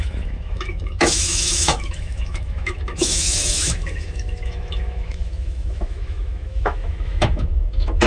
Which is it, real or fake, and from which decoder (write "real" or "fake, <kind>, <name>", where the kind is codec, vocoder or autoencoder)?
fake, autoencoder, DAC-VAE